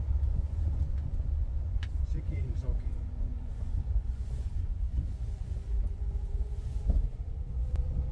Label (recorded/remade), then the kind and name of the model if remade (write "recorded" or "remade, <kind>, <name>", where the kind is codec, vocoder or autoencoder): remade, vocoder, Vocos